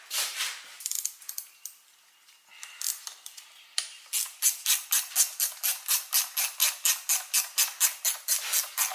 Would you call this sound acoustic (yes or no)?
yes